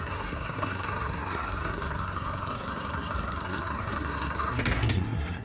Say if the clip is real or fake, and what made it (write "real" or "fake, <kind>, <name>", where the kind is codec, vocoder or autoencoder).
fake, codec, SNAC